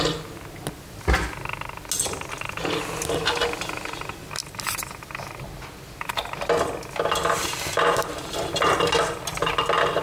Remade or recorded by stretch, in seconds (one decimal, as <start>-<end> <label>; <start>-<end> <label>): 0.0-10.0 recorded